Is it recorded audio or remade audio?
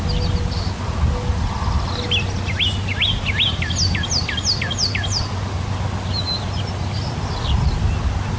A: recorded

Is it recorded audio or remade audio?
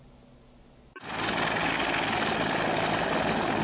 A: recorded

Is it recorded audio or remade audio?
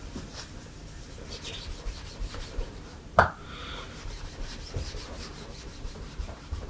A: remade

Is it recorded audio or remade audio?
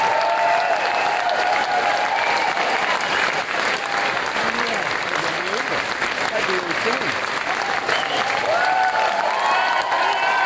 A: recorded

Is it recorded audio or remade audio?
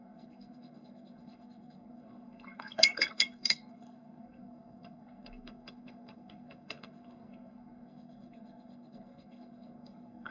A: remade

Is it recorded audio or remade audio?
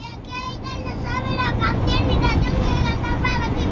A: remade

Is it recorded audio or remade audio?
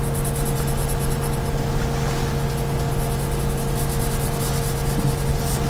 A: recorded